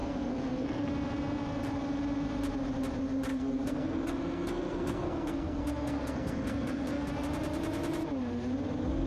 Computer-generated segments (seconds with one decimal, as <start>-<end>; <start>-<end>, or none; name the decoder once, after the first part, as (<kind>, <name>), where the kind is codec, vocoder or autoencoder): 0.0-0.9 (codec, SNAC); 3.3-7.1